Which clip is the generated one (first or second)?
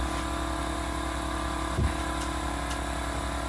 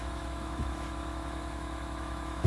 second